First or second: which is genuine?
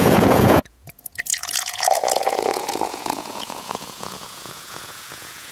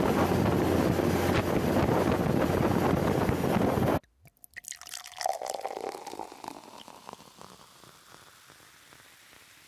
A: second